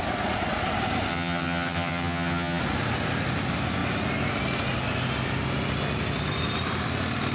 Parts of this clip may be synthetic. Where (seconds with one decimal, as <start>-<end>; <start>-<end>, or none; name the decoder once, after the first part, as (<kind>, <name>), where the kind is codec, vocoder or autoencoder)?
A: 1.1-2.6 (vocoder, HiFi-GAN)